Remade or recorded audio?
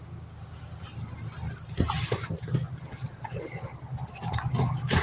recorded